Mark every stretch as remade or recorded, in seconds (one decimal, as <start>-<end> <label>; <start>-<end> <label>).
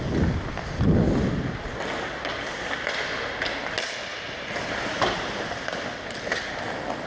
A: 0.0-1.6 recorded; 1.6-2.9 remade; 2.9-4.1 recorded; 4.1-5.4 remade; 5.4-7.1 recorded